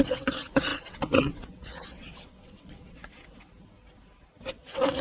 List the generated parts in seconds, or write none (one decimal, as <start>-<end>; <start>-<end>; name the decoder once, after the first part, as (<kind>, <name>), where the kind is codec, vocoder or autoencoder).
0.0-3.5 (vocoder, WaveNeXt); 4.5-5.0